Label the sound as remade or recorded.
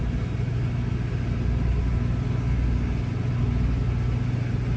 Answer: recorded